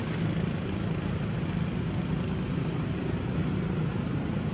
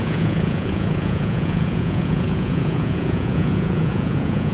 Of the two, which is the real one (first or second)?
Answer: first